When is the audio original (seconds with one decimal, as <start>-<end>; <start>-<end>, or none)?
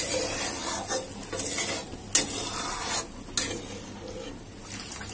0.0-5.1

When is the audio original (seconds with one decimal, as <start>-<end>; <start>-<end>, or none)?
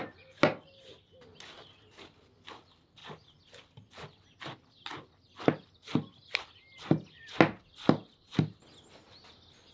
0.0-3.0; 3.7-9.7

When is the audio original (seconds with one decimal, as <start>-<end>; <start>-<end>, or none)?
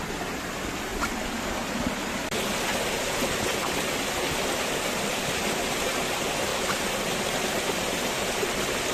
0.0-8.9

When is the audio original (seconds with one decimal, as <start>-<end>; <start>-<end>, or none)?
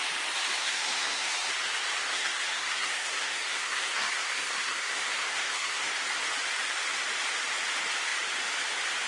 0.0-0.6; 1.3-2.1; 5.9-9.1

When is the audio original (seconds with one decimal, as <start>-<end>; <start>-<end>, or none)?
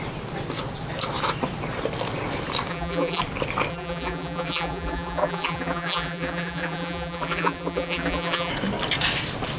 0.0-2.7; 3.2-3.7; 8.5-9.6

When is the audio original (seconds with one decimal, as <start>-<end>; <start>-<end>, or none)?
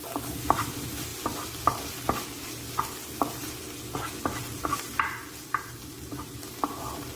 0.0-7.2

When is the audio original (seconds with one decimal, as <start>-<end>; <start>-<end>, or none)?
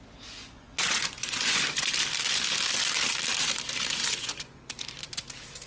0.0-0.4; 1.9-4.0; 4.7-5.7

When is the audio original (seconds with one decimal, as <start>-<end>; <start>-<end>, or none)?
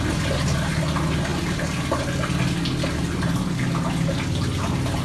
0.0-5.0